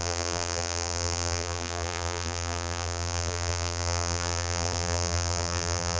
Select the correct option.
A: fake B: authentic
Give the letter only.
A